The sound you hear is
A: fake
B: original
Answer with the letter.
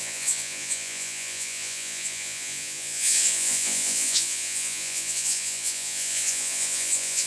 A